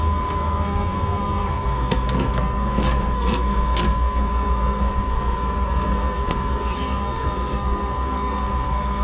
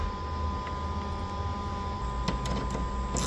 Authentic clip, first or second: second